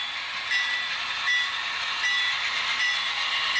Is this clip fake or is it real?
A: real